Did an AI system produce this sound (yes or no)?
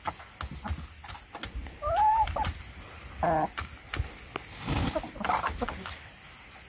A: no